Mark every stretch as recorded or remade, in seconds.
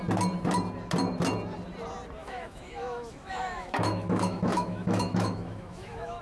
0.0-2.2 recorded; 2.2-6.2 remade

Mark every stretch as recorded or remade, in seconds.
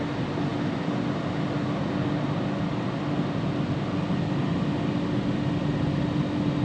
0.0-6.6 recorded